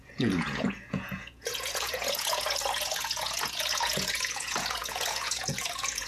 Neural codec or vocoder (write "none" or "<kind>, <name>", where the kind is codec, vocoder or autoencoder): vocoder, Vocos